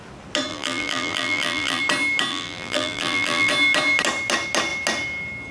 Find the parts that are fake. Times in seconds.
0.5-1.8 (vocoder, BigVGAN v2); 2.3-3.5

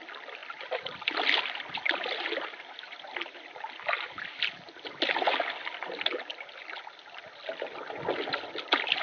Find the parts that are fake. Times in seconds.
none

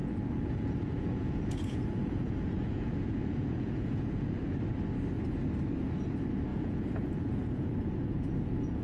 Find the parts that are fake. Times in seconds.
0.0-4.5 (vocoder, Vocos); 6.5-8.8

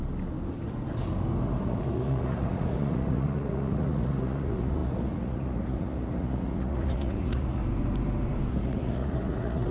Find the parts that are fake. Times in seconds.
1.6-7.6 (vocoder, Vocos); 8.5-9.7

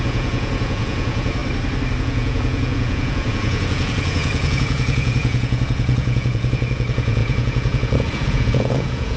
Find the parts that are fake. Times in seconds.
0.0-1.4 (vocoder, Vocos); 2.0-9.2